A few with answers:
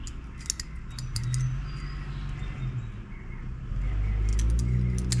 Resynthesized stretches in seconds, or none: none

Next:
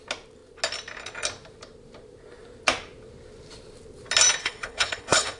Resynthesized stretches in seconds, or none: 4.4-5.4 (codec, HILCodec)

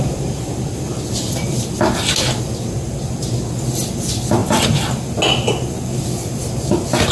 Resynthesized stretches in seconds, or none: none